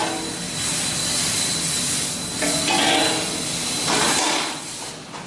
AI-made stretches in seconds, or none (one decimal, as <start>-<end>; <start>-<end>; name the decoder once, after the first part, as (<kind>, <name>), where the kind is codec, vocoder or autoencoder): 3.6-4.6 (vocoder, BigVGAN v2)